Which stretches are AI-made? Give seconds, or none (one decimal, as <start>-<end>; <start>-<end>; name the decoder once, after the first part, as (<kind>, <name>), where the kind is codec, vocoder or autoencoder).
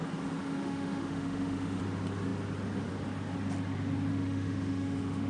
0.4-1.8 (autoencoder, DAC-VAE); 4.1-5.3